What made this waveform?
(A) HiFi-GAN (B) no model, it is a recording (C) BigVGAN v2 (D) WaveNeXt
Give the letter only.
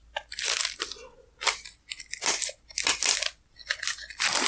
B